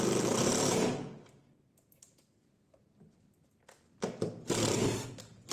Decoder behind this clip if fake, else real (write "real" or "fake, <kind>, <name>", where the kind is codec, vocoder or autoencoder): real